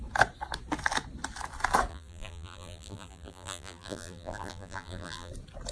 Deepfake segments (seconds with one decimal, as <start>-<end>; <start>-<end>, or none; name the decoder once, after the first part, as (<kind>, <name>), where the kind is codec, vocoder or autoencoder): 1.9-5.3 (vocoder, BigVGAN v2)